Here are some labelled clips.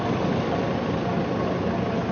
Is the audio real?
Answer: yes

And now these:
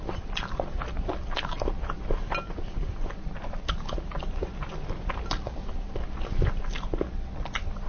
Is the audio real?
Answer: yes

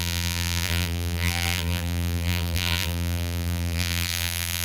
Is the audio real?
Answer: no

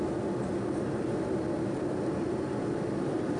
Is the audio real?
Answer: yes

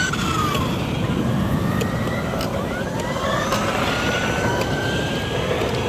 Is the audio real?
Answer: yes